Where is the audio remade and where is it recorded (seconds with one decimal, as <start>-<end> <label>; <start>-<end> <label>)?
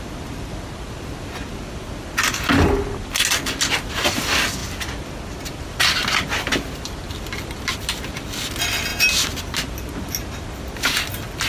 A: 0.0-11.5 recorded